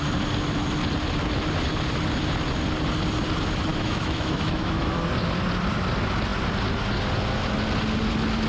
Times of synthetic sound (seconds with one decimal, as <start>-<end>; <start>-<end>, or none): 3.7-5.0